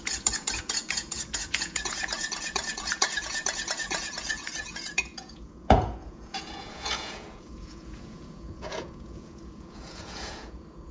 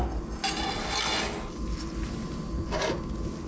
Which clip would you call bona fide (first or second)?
second